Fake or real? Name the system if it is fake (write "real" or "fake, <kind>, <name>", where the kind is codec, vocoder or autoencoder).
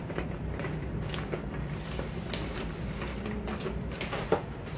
real